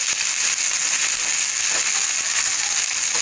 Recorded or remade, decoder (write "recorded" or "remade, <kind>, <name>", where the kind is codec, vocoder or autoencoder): recorded